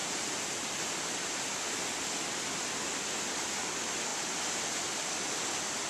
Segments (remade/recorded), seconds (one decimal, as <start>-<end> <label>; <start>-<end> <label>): 0.0-5.9 recorded